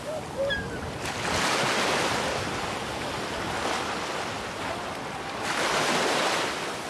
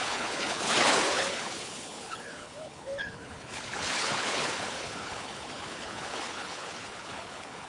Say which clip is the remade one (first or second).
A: second